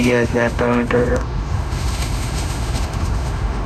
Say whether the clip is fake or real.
fake